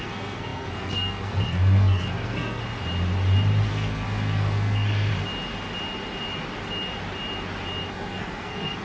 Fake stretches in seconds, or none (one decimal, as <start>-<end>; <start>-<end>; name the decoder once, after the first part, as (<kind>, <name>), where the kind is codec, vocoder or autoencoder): 0.0-2.6 (codec, SNAC); 3.7-5.1; 7.9-8.8